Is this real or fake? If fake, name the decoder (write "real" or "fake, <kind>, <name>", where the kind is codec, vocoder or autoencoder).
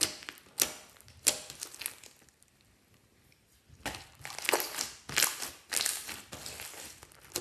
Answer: real